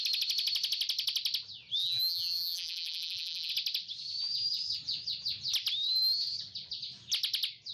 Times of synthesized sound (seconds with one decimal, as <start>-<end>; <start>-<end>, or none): 1.8-3.5